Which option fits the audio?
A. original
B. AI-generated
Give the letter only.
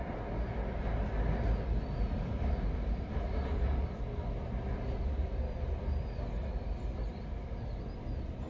A